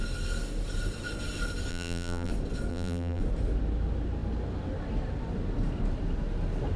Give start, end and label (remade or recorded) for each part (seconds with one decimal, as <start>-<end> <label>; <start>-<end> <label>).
0.0-1.7 recorded; 1.7-2.3 remade; 2.3-2.7 recorded; 2.7-3.2 remade; 3.2-6.8 recorded